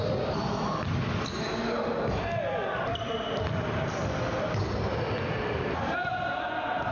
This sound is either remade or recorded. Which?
recorded